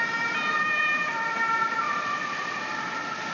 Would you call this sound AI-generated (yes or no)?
no